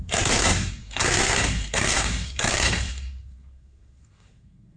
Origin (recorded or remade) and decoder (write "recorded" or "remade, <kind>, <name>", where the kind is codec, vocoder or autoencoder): remade, codec, SNAC